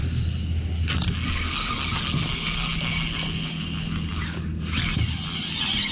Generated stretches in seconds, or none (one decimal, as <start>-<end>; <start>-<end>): none

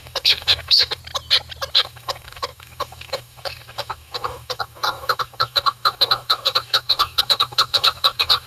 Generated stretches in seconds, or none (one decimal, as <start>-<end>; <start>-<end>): 0.0-1.0; 1.7-8.5

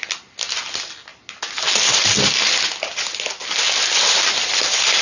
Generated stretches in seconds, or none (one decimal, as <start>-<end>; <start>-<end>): none

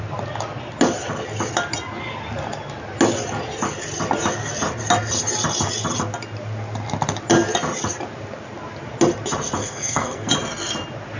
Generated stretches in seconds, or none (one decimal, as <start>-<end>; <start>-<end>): 9.6-10.3

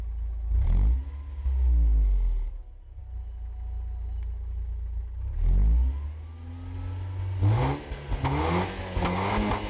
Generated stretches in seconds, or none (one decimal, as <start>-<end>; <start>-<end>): none

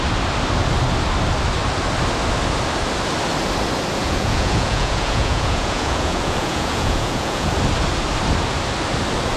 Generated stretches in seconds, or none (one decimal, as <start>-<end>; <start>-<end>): 4.0-7.5